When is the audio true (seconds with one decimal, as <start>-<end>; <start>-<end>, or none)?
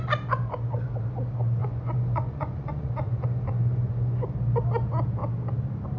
0.0-1.6; 4.3-6.0